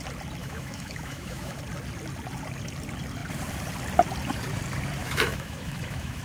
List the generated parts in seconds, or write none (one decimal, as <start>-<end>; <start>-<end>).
0.4-1.6; 5.0-6.2